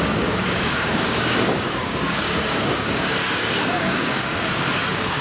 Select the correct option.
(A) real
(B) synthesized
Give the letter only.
B